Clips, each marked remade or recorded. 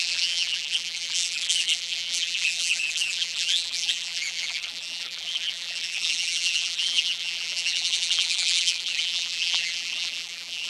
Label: remade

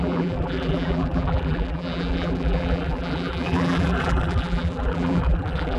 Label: remade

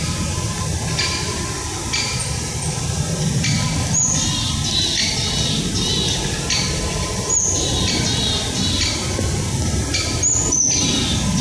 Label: recorded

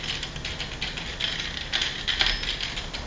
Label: recorded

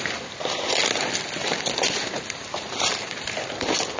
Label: recorded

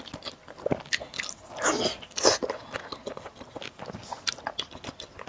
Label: recorded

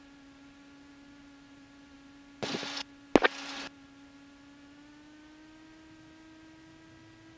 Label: recorded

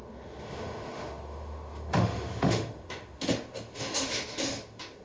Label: remade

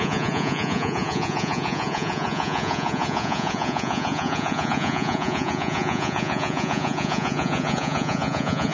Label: remade